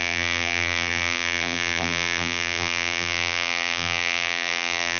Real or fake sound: fake